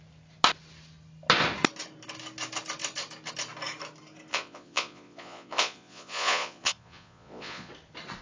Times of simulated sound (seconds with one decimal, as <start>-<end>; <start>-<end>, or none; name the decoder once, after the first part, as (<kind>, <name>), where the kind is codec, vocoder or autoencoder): 4.3-7.7 (vocoder, Vocos)